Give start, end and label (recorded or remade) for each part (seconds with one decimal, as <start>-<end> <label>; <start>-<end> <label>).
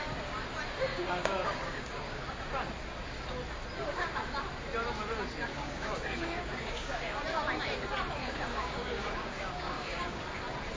0.0-0.9 recorded; 0.9-2.4 remade; 2.4-5.5 recorded; 5.5-7.2 remade; 7.2-8.2 recorded; 8.2-10.2 remade; 10.2-10.8 recorded